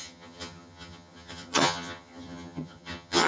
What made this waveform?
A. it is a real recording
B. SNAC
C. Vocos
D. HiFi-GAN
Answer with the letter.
D